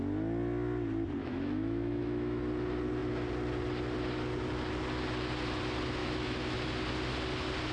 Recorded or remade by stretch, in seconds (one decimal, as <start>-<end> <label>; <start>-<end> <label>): 0.0-1.2 recorded; 1.2-2.4 remade; 2.4-6.0 recorded; 6.0-6.7 remade; 6.7-7.7 recorded